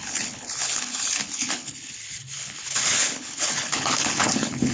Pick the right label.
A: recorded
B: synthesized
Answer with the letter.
B